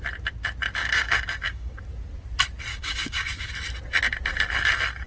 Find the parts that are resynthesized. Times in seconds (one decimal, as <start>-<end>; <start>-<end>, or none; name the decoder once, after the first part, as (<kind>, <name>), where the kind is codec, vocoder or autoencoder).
0.8-1.8 (codec, DAC); 2.7-3.5